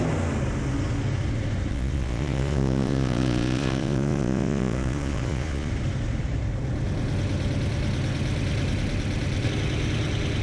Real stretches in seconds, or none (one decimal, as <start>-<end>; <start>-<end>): 0.0-1.7; 5.7-10.4